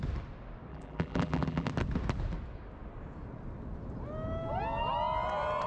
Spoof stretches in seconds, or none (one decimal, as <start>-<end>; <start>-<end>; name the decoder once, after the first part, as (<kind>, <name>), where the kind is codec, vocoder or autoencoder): 0.7-1.7 (vocoder, BigVGAN v2)